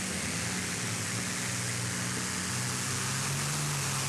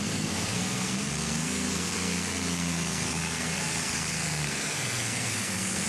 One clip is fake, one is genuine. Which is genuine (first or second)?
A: first